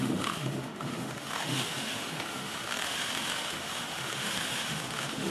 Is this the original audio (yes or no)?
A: no